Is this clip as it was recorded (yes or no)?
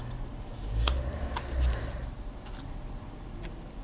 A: no